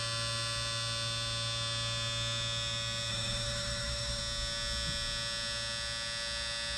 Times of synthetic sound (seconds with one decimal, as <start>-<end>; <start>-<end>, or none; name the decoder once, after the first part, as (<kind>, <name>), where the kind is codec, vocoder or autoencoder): 3.1-4.2 (autoencoder, DAC-VAE)